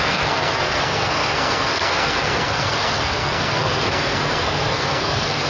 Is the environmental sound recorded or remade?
remade